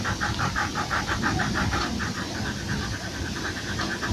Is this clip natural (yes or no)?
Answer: yes